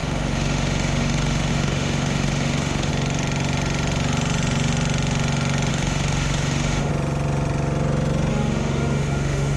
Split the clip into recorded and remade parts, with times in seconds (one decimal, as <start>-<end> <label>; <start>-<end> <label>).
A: 0.0-2.9 remade; 2.9-5.7 recorded; 5.7-6.9 remade; 6.9-8.3 recorded; 8.3-9.6 remade